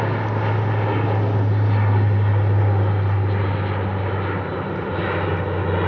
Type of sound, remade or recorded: recorded